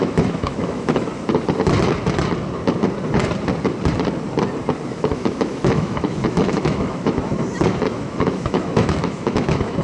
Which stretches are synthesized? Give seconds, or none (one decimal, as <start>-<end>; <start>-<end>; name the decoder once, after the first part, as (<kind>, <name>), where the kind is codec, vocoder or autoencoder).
0.0-1.1 (autoencoder, DAC-VAE); 4.9-7.3; 7.9-9.8